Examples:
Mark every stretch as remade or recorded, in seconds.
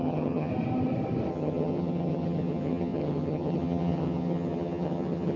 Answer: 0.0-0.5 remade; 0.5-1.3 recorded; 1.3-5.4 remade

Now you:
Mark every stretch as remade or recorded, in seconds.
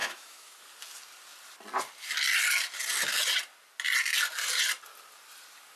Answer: 0.0-0.6 remade; 0.6-5.8 recorded